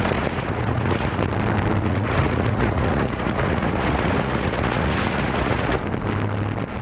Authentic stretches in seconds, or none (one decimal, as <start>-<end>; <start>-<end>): 1.3-1.8; 5.8-6.8